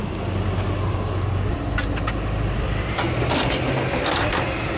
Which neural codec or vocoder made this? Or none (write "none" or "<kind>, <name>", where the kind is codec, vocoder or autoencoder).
none